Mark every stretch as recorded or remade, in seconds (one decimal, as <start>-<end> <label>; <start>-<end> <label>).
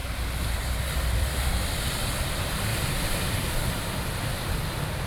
0.0-1.5 remade; 1.5-2.7 recorded; 2.7-3.4 remade; 3.4-5.1 recorded